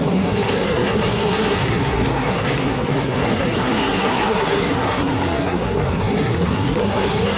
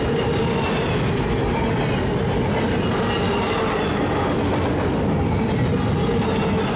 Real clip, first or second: second